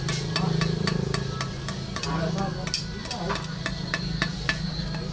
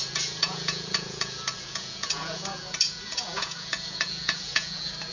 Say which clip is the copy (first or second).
second